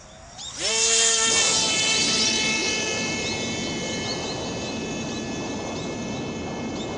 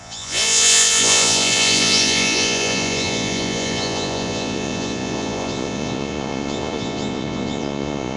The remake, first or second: second